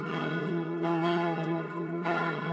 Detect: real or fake fake